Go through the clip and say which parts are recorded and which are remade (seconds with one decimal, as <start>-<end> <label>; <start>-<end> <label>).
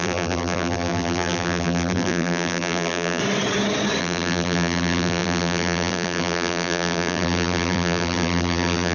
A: 0.0-3.2 remade; 3.2-4.0 recorded; 4.0-8.9 remade